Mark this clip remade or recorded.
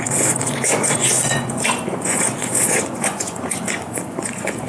remade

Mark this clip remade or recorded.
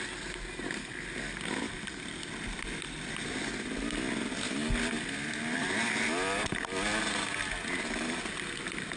recorded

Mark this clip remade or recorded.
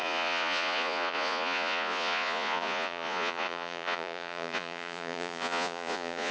remade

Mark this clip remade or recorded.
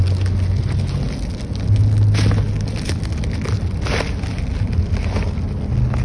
recorded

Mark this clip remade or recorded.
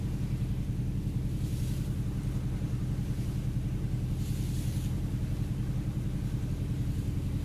recorded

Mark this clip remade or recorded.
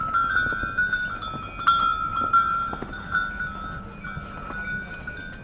recorded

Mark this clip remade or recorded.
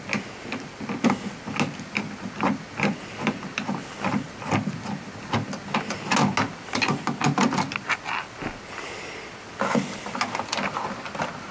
recorded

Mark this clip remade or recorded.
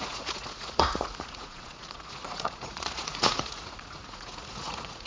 remade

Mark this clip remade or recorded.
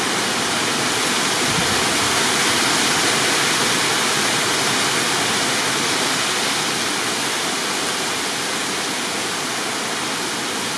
recorded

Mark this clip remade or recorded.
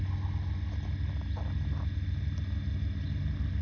recorded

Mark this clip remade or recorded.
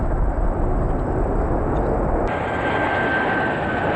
recorded